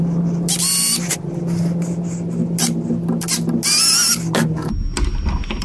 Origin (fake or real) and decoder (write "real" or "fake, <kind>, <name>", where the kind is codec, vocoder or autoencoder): real